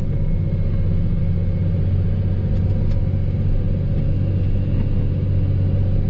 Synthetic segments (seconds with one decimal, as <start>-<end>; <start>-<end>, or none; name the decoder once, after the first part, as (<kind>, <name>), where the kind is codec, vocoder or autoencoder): none